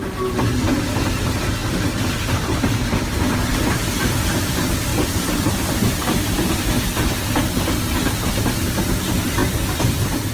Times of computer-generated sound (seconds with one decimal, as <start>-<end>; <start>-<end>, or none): 1.6-2.6; 4.9-7.8